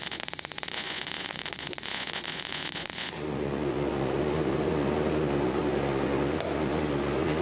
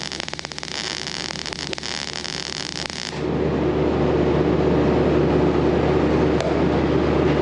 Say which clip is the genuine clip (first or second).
second